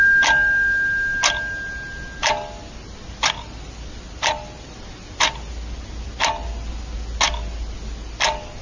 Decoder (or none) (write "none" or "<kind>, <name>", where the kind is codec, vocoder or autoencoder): none